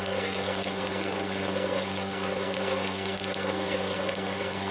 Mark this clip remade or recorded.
remade